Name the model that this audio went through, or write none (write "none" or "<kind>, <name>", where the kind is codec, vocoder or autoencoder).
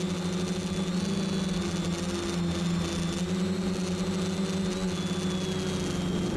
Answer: none